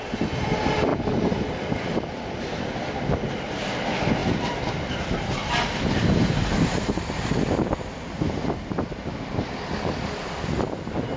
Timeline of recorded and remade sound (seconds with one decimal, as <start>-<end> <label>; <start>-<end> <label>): 0.0-11.2 recorded